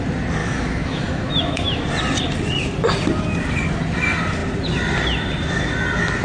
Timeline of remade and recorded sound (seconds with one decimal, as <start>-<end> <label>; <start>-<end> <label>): 0.0-0.4 recorded; 0.4-1.8 remade; 1.8-6.2 recorded